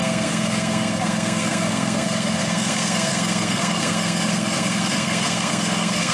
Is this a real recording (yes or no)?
no